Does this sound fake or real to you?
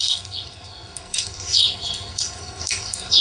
fake